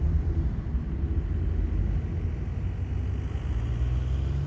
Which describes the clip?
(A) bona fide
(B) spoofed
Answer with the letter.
A